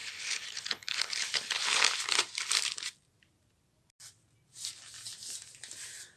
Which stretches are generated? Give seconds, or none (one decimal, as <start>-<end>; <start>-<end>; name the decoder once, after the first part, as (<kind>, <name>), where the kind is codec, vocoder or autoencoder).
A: 0.0-2.0 (codec, HILCodec)